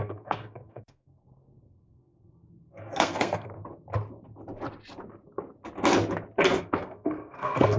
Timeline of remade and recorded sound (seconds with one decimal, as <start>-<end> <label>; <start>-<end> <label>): 0.0-3.6 remade; 3.6-6.6 recorded; 6.6-7.8 remade